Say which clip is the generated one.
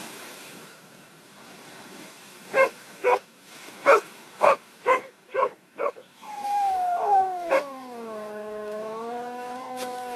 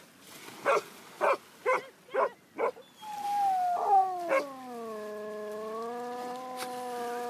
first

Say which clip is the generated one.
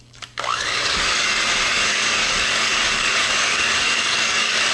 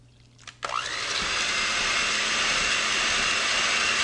first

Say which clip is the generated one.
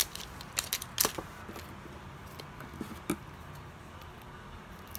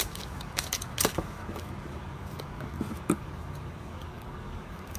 second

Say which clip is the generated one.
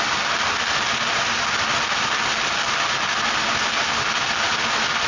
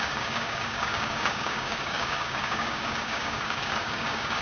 second